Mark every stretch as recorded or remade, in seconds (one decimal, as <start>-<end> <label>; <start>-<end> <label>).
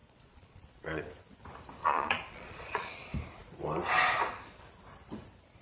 0.0-1.0 remade; 1.0-1.8 recorded; 1.8-2.9 remade; 2.9-5.6 recorded